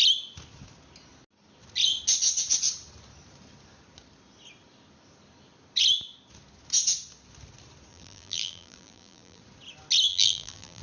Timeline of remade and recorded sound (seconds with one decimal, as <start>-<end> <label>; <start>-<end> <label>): 0.0-7.9 recorded; 7.9-9.4 remade; 9.4-10.1 recorded; 10.1-10.8 remade